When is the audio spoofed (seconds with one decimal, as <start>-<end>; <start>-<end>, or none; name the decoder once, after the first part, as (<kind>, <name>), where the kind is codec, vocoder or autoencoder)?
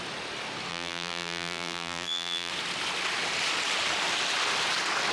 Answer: 0.7-2.5 (vocoder, BigVGAN v2)